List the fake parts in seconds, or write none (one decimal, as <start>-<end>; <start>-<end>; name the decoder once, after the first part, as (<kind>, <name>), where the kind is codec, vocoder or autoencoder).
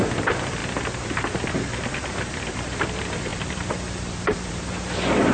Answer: 0.0-5.3 (vocoder, BigVGAN v2)